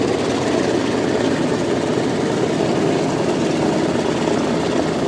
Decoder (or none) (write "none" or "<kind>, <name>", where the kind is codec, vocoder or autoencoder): none